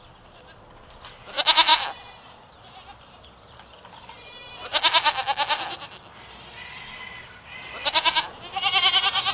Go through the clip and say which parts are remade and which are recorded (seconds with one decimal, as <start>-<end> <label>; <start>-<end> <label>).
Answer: 0.0-9.3 recorded